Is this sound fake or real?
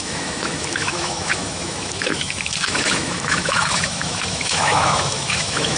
fake